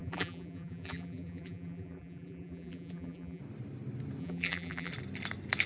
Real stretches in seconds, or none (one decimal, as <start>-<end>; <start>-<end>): 3.4-4.2; 4.9-5.7